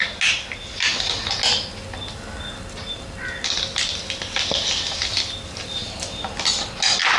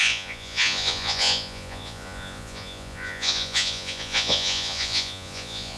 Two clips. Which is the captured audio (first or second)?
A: first